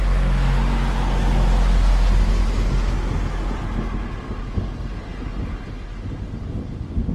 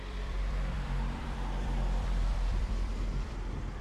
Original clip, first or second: first